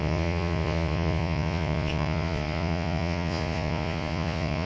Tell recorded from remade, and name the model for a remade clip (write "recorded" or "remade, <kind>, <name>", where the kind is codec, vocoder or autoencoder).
remade, vocoder, Vocos